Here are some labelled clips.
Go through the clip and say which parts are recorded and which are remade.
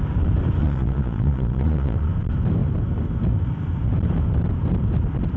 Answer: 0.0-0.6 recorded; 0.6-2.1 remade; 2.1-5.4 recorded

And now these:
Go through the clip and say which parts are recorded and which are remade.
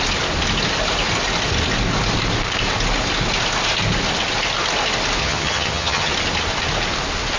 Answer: 0.0-5.2 recorded; 5.2-6.1 remade; 6.1-7.4 recorded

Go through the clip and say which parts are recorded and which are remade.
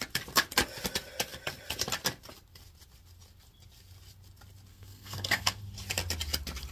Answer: 0.0-4.7 recorded; 4.7-5.6 remade; 5.6-6.7 recorded